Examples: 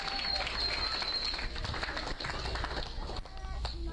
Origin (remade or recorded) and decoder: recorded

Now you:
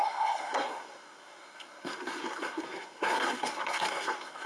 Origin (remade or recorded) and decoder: remade, codec, SNAC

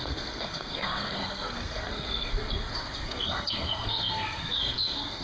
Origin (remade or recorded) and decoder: remade, codec, SNAC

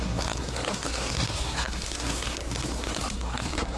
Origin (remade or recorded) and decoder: remade, codec, SNAC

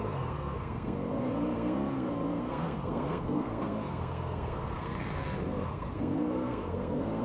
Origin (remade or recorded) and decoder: remade, codec, SNAC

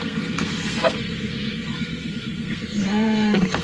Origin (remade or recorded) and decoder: remade, codec, SNAC